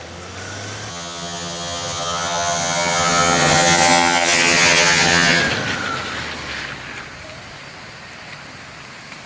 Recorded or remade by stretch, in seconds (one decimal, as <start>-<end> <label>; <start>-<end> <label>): 0.0-0.9 recorded; 0.9-5.4 remade; 5.4-9.3 recorded